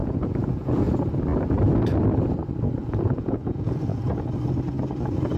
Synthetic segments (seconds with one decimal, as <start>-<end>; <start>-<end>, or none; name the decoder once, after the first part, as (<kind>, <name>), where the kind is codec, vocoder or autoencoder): 0.0-0.9 (vocoder, Vocos); 2.8-4.3